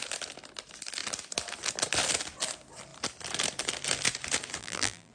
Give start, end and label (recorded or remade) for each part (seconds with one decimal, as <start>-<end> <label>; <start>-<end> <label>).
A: 0.0-4.6 recorded; 4.6-5.1 remade